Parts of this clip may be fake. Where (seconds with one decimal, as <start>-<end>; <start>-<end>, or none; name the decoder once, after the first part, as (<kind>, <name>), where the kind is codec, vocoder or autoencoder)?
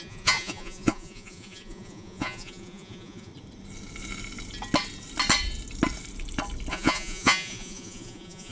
0.0-3.3 (vocoder, Vocos); 6.7-8.5